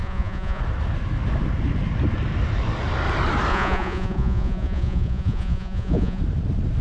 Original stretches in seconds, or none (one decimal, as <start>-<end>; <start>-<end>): 0.6-3.5; 6.2-6.8